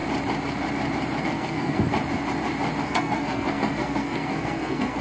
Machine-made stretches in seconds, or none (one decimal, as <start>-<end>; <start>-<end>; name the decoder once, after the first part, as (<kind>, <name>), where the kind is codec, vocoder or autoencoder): 1.2-1.9 (codec, SNAC); 2.8-5.0